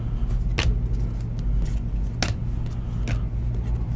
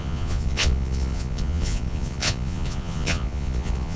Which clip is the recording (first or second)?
first